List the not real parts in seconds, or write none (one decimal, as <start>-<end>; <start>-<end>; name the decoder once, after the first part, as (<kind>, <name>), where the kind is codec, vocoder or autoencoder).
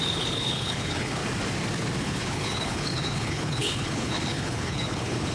0.0-1.2 (codec, HILCodec); 2.0-5.3